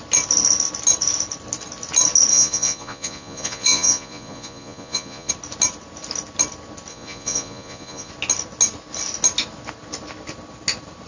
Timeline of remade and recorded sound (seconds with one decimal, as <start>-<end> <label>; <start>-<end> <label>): 0.0-2.3 recorded; 2.3-5.3 remade; 5.3-6.9 recorded; 6.9-8.1 remade; 8.1-11.1 recorded